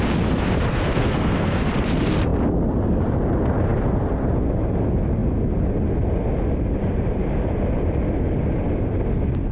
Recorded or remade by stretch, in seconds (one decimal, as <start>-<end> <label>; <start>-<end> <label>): 0.0-0.7 recorded; 0.7-1.7 remade; 1.7-9.5 recorded